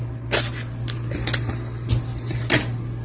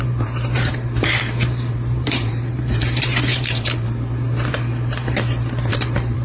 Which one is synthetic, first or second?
second